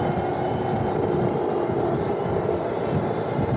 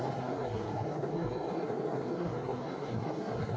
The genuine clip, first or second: first